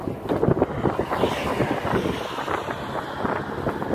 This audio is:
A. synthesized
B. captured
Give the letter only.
B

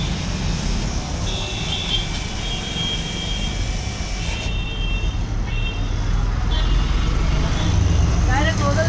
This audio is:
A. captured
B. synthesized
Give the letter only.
A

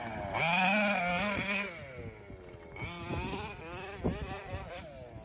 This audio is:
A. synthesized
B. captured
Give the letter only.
B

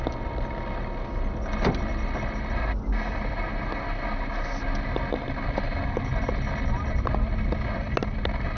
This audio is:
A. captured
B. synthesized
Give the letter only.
A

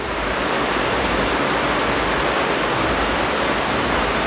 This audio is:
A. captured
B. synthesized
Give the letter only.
A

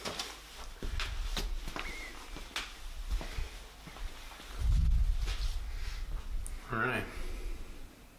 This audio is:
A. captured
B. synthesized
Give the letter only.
A